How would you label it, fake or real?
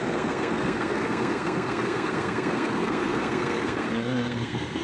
fake